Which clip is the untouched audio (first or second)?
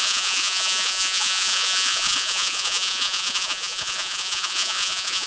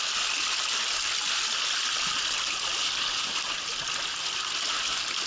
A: second